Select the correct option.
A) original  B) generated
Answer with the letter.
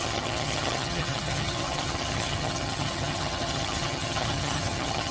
B